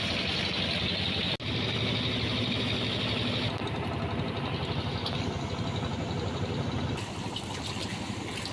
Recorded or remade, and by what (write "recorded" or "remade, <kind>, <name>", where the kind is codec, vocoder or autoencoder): recorded